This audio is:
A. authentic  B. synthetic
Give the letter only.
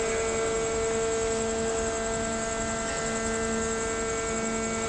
A